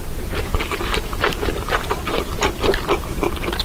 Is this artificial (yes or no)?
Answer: yes